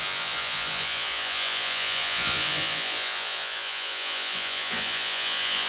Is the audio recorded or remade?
remade